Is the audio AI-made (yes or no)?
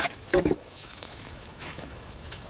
yes